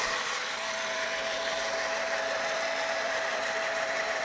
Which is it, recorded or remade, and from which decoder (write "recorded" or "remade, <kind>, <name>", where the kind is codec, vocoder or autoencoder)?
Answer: remade, vocoder, BigVGAN v2